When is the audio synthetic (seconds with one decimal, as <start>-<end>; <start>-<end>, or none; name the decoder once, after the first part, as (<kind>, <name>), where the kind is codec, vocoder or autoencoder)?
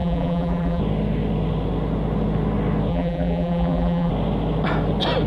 0.0-0.8 (vocoder, BigVGAN v2); 2.9-4.1